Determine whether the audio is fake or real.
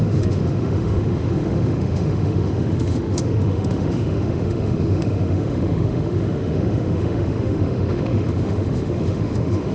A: fake